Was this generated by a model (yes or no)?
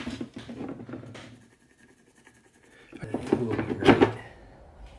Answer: no